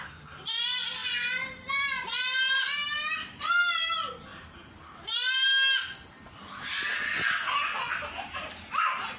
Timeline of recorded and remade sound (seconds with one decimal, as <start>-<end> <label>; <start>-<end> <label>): 0.0-9.2 recorded